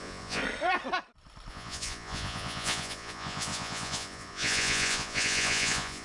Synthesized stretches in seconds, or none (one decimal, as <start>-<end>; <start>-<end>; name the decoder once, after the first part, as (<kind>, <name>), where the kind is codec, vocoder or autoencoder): 0.0-0.4 (vocoder, Vocos); 1.5-6.0